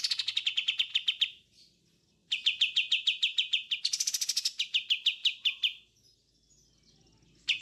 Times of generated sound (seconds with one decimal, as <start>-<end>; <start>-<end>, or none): 0.9-1.8; 2.2-3.8; 5.2-6.0